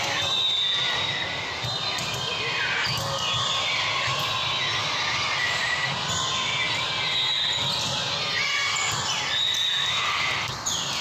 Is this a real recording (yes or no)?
yes